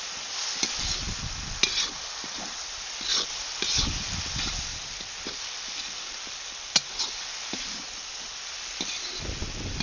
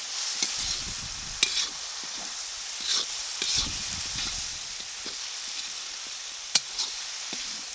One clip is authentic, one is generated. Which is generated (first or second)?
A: second